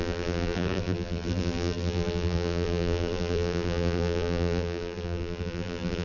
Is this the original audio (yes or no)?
no